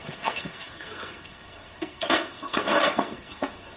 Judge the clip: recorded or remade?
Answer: remade